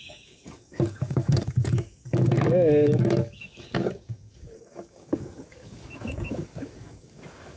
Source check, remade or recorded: remade